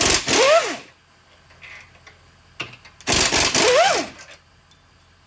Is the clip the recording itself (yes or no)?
yes